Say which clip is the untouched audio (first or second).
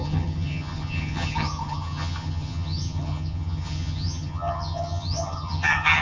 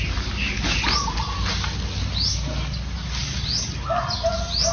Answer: second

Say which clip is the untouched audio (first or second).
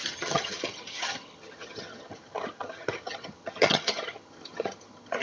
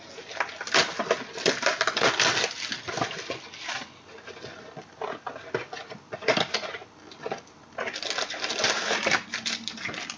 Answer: second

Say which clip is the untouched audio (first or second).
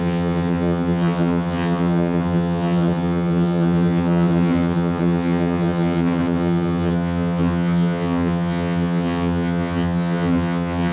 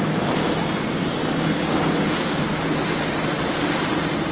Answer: second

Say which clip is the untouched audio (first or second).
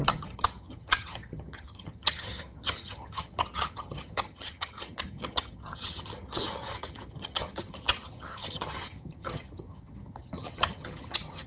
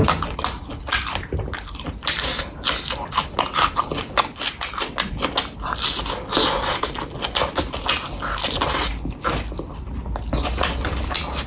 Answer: second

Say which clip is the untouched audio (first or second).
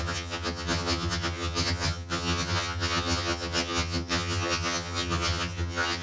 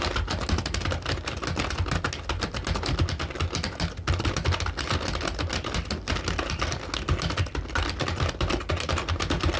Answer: second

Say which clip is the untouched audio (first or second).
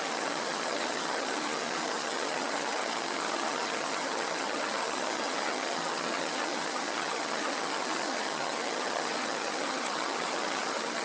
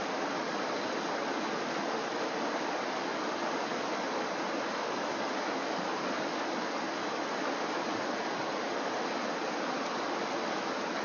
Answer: second